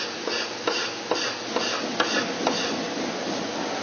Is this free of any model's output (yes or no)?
yes